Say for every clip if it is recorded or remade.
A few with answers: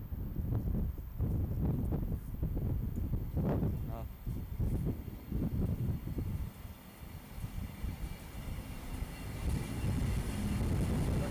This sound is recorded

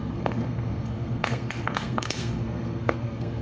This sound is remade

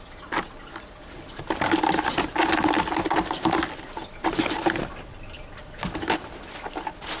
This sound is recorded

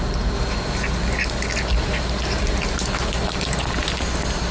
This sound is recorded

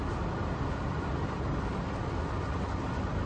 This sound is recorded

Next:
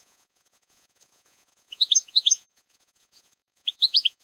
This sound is remade